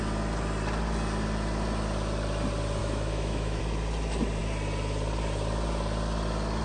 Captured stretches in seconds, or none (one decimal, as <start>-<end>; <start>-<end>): 0.0-2.8; 3.6-6.6